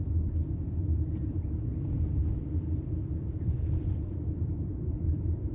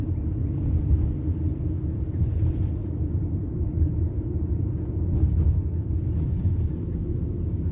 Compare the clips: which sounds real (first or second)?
second